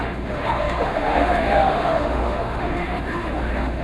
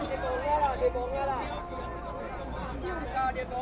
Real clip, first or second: second